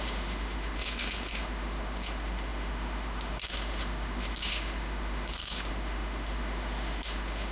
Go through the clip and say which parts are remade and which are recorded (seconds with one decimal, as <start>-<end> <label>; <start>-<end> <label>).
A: 0.0-7.5 remade